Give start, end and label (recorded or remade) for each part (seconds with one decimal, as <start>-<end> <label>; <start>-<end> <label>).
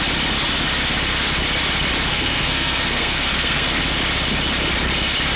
0.0-2.1 recorded; 2.1-3.8 remade; 3.8-5.4 recorded